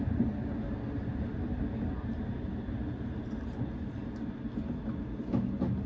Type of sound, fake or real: real